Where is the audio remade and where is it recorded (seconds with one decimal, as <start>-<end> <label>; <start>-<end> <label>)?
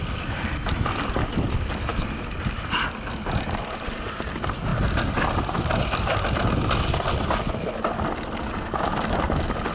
0.0-9.7 recorded